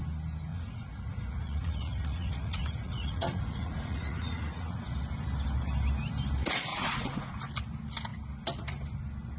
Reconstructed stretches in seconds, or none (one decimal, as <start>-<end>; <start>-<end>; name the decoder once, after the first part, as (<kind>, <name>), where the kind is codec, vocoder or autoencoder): 0.5-4.8 (vocoder, Vocos); 6.7-7.4